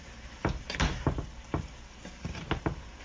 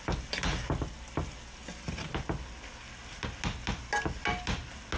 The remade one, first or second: first